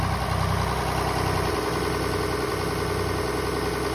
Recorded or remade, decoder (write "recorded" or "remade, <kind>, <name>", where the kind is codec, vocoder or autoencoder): recorded